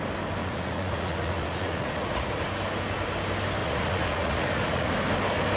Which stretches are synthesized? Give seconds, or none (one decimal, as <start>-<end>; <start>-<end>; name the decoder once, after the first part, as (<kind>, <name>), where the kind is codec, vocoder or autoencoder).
0.4-2.4 (vocoder, Vocos); 3.6-4.9

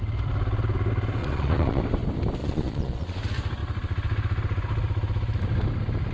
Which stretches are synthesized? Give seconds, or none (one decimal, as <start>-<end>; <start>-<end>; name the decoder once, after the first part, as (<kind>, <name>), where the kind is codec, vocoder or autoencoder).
1.2-1.8 (vocoder, Vocos); 2.4-3.2

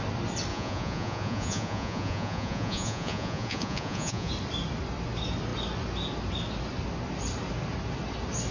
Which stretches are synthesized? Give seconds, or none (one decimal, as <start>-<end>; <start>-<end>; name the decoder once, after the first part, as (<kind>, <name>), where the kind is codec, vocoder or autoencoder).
0.5-4.3 (vocoder, Vocos)

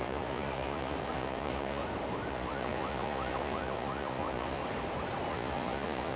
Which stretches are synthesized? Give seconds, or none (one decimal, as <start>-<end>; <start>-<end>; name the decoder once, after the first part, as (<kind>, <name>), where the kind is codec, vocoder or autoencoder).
0.0-1.8 (vocoder, Vocos); 2.3-4.6; 5.3-6.2